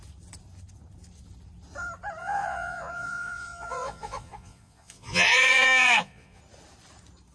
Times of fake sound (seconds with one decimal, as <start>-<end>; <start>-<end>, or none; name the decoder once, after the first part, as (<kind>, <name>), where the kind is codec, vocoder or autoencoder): 2.2-6.4 (vocoder, Vocos)